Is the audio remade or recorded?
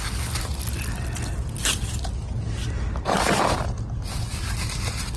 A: recorded